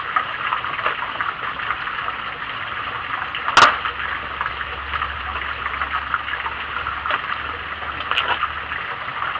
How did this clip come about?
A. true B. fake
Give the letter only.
A